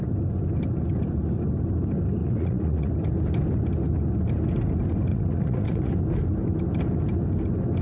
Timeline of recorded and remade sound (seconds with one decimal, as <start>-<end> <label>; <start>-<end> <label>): 0.0-2.2 recorded; 2.2-2.9 remade; 2.9-5.1 recorded; 5.1-5.9 remade; 5.9-7.8 recorded